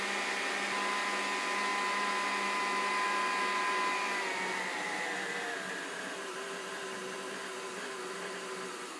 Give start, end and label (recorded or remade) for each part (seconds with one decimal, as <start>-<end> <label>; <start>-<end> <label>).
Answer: 0.0-9.0 recorded